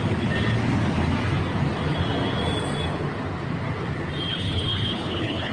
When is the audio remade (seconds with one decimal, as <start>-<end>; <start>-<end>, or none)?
4.3-5.5